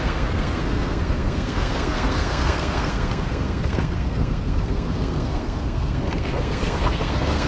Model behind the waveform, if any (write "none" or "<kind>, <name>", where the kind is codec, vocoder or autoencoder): codec, SNAC